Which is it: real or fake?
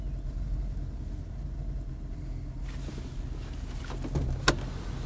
real